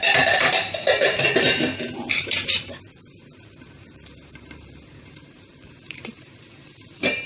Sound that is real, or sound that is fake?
fake